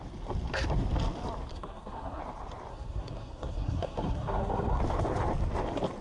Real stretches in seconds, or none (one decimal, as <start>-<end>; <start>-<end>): 0.0-1.5; 2.2-2.7; 4.8-6.0